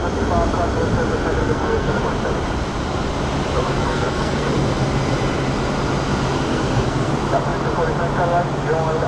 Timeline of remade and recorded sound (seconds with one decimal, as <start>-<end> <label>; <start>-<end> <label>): 0.0-1.4 recorded; 1.4-2.0 remade; 2.0-3.7 recorded; 3.7-4.5 remade; 4.5-6.5 recorded; 6.5-7.1 remade; 7.1-9.1 recorded